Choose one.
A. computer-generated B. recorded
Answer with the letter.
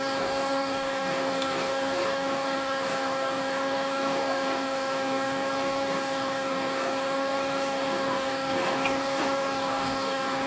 A